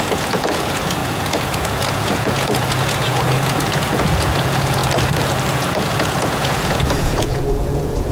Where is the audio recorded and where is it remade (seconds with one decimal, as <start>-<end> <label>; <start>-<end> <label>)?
0.0-4.8 remade; 4.8-5.5 recorded; 5.5-8.1 remade